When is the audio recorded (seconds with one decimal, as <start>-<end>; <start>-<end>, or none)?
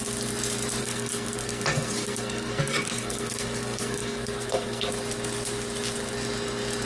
0.0-0.8; 4.9-6.9